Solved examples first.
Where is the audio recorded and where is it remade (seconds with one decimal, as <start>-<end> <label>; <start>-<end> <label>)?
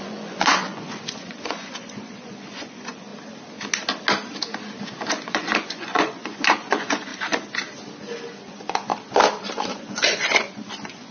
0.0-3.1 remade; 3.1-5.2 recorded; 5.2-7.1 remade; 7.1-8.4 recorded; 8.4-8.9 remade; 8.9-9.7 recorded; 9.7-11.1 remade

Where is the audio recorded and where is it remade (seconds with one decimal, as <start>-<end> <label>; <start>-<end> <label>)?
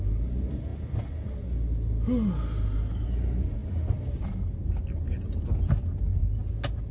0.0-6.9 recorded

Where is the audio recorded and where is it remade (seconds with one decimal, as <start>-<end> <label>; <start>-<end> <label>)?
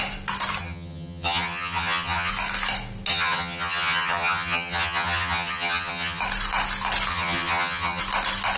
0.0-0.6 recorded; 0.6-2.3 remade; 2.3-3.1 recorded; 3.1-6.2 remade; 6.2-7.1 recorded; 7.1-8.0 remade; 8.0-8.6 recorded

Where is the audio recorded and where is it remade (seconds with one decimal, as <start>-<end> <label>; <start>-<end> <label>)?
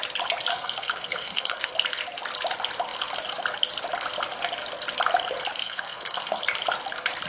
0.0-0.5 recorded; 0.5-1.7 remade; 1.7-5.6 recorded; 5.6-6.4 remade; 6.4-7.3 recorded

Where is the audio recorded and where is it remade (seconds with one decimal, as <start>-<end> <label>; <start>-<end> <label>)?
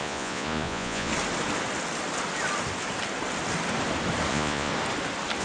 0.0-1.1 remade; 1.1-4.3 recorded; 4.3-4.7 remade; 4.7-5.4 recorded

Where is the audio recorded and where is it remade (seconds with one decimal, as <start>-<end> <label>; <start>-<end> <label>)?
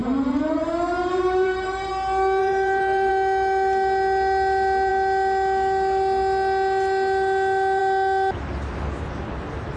0.0-1.9 remade; 1.9-2.4 recorded; 2.4-3.1 remade; 3.1-9.8 recorded